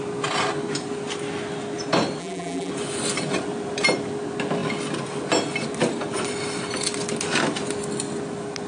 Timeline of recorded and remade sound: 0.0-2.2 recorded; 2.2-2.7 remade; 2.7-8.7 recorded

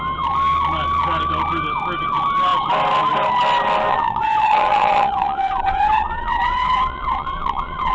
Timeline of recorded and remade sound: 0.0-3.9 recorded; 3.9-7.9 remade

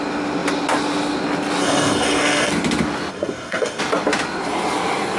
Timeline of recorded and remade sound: 0.0-1.6 recorded; 1.6-2.5 remade; 2.5-3.1 recorded; 3.1-3.8 remade; 3.8-5.2 recorded